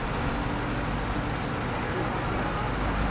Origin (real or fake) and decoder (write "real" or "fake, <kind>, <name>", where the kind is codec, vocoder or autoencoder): real